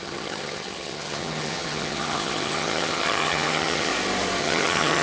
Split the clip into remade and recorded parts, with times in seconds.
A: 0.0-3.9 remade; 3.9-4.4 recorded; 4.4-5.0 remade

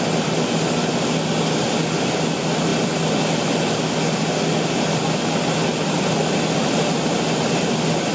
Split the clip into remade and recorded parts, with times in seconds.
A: 0.0-8.1 recorded

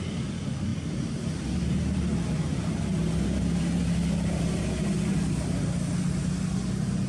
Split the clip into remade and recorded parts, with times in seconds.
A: 0.0-7.1 recorded

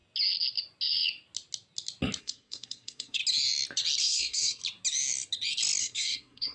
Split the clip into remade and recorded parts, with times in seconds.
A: 0.0-2.2 recorded; 2.2-3.2 remade; 3.2-4.0 recorded; 4.0-4.6 remade; 4.6-5.8 recorded; 5.8-6.5 remade

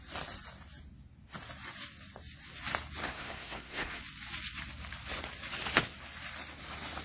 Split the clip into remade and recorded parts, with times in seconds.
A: 0.0-3.0 recorded; 3.0-4.0 remade; 4.0-7.0 recorded

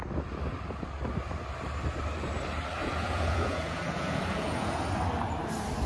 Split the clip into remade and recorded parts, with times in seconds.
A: 0.0-2.8 recorded; 2.8-4.8 remade; 4.8-5.9 recorded

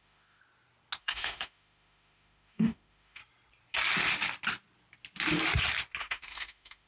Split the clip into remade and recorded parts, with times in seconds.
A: 0.0-0.4 remade; 0.4-1.0 recorded; 1.0-3.2 remade; 3.2-6.0 recorded; 6.0-6.9 remade